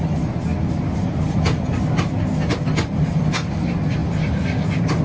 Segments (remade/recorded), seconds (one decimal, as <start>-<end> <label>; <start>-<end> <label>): 0.0-5.0 recorded